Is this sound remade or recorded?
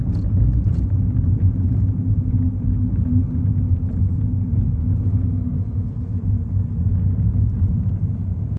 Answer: remade